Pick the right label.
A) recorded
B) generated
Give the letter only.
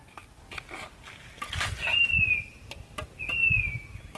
A